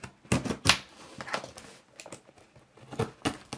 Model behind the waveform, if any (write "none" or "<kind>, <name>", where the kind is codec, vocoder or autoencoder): none